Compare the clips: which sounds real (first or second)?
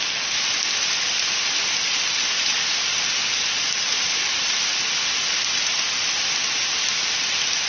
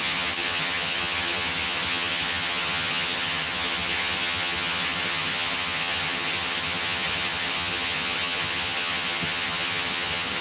first